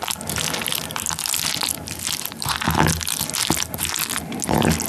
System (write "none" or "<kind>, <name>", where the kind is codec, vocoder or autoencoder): none